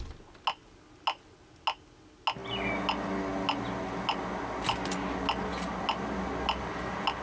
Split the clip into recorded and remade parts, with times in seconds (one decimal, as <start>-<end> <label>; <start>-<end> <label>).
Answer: 0.0-7.2 recorded